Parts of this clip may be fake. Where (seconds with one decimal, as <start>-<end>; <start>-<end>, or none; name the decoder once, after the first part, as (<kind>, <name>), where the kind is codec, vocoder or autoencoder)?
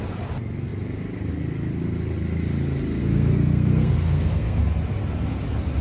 3.0-4.6 (codec, SNAC)